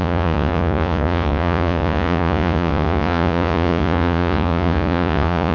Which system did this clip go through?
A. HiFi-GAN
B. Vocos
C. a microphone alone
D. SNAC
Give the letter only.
B